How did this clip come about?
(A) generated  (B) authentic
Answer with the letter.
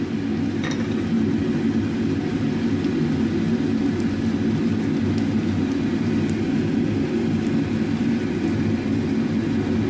B